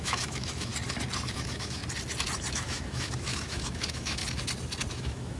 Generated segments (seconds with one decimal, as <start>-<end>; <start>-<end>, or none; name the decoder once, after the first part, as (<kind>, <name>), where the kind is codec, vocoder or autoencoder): 0.0-0.7 (autoencoder, DAC-VAE); 1.3-1.8; 2.5-4.2; 4.9-5.4

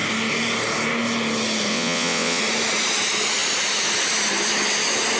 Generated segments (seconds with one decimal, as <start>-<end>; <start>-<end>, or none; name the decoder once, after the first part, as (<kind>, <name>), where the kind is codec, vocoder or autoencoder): 1.7-2.4 (vocoder, WaveNeXt)

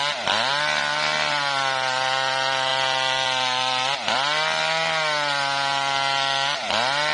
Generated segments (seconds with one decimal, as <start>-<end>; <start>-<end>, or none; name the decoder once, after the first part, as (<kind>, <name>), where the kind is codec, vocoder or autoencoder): none